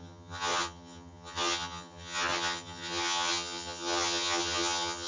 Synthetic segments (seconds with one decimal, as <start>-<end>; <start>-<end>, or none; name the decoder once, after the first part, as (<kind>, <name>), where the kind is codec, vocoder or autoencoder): 0.0-5.1 (vocoder, HiFi-GAN)